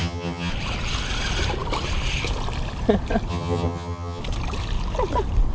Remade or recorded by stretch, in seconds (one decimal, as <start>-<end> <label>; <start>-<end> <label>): 0.0-0.5 remade; 0.5-3.3 recorded; 3.3-4.2 remade; 4.2-5.5 recorded